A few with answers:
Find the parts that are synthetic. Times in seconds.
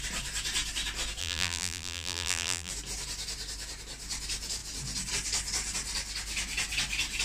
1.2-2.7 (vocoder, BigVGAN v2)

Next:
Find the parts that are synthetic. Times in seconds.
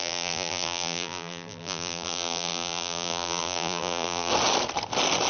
0.0-4.3 (vocoder, BigVGAN v2)